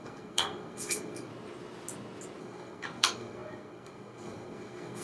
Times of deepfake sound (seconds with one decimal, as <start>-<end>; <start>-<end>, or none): 0.0-1.3; 2.4-5.0